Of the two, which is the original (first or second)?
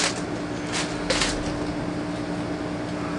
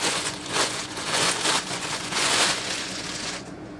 first